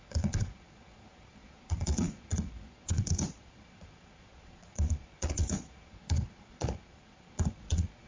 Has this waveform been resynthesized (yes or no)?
yes